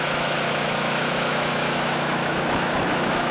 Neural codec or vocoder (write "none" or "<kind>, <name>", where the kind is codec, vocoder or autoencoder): autoencoder, DAC-VAE